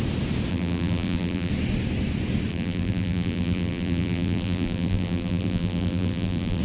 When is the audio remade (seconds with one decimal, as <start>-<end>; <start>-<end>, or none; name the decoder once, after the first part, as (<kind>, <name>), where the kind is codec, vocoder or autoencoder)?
0.5-1.5 (vocoder, BigVGAN v2); 2.5-6.6